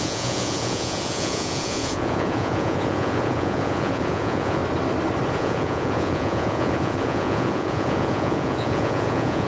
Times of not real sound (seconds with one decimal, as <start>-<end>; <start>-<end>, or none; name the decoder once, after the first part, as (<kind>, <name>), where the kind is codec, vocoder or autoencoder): 0.0-4.6 (vocoder, Vocos); 5.3-9.5